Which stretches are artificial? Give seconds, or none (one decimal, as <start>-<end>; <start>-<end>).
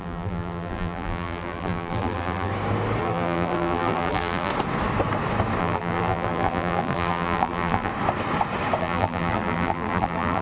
0.0-2.5; 3.0-4.5; 5.6-7.9; 8.8-10.4